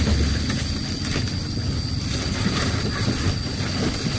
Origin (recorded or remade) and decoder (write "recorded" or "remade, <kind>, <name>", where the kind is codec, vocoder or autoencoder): recorded